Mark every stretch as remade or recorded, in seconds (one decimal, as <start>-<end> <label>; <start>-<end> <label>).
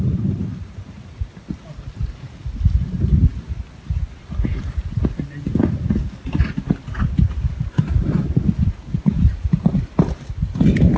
0.0-11.0 recorded